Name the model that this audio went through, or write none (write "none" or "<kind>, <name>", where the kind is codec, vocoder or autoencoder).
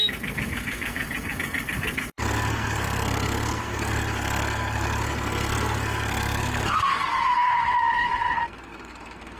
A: codec, SNAC